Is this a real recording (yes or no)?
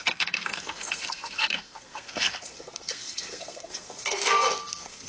no